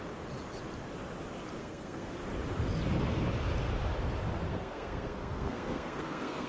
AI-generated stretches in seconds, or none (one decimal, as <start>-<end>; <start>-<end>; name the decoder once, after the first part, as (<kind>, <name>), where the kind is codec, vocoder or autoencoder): 1.6-2.1 (codec, SNAC); 4.5-6.5